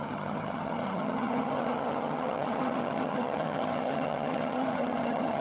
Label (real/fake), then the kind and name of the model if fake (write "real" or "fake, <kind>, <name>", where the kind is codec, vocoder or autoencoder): fake, vocoder, HiFi-GAN